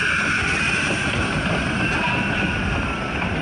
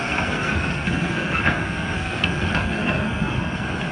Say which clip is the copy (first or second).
second